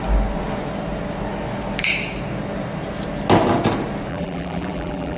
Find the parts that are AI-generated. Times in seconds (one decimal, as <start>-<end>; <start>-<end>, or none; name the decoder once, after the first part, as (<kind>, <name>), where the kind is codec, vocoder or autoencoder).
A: 4.1-5.2 (vocoder, BigVGAN v2)